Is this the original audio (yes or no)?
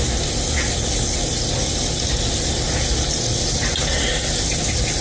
yes